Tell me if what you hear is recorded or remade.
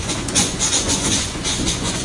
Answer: remade